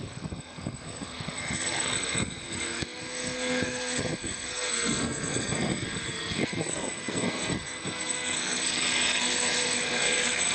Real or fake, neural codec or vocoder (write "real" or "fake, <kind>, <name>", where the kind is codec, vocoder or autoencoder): fake, codec, SNAC